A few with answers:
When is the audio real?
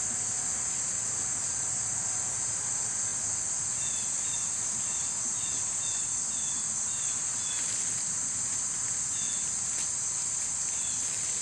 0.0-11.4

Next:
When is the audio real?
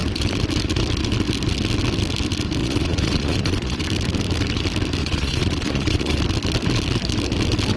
0.0-2.6; 3.8-5.0; 6.2-7.8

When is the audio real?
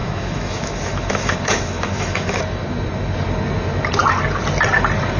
2.4-5.2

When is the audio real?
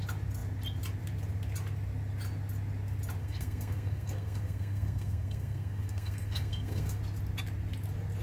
0.0-3.2; 7.0-8.2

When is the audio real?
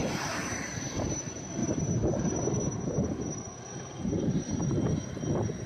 0.0-1.6; 2.4-4.0; 4.6-5.7